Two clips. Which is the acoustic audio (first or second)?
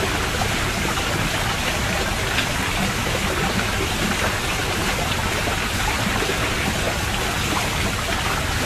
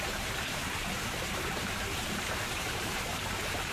first